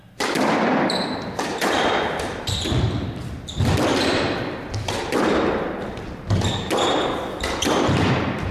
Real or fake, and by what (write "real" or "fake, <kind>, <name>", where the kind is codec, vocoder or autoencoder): fake, vocoder, BigVGAN v2